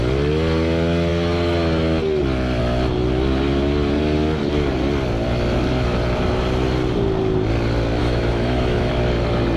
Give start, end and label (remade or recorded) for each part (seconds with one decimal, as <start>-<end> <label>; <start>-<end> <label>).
0.0-8.0 recorded; 8.0-8.9 remade; 8.9-9.6 recorded

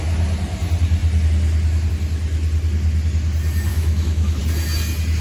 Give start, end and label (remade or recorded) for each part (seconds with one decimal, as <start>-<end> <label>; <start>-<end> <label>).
0.0-3.7 recorded; 3.7-4.4 remade; 4.4-5.2 recorded